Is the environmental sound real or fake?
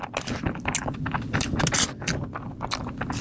real